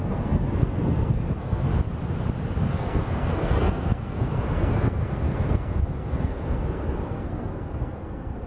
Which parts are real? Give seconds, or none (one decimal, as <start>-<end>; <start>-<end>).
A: 1.7-2.7